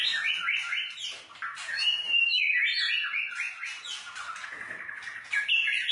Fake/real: real